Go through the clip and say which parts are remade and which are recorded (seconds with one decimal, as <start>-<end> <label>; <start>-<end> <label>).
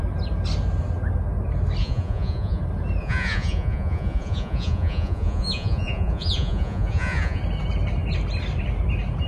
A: 0.0-1.8 recorded; 1.8-2.6 remade; 2.6-3.0 recorded; 3.0-7.4 remade; 7.4-9.3 recorded